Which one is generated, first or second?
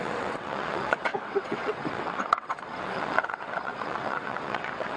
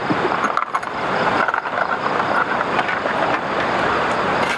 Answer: first